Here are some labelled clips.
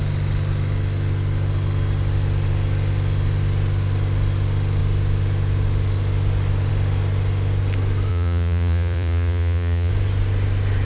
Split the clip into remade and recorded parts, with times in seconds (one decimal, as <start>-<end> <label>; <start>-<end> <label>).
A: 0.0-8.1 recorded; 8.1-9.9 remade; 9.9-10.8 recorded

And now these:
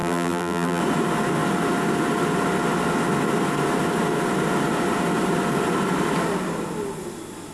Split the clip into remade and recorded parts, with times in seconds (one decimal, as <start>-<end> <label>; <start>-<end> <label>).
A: 0.0-0.8 remade; 0.8-7.5 recorded

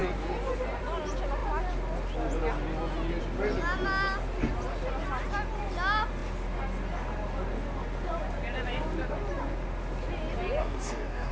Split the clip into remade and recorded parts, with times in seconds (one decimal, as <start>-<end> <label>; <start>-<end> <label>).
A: 0.0-10.6 recorded; 10.6-11.3 remade

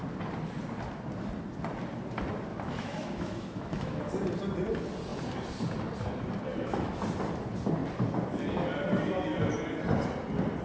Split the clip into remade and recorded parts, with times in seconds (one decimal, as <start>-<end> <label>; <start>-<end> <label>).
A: 0.0-2.5 recorded; 2.5-4.1 remade; 4.1-6.5 recorded; 6.5-7.0 remade; 7.0-10.6 recorded

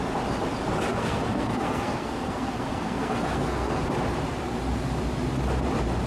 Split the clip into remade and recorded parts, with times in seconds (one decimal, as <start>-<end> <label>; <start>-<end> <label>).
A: 0.0-0.9 recorded; 0.9-3.8 remade; 3.8-6.1 recorded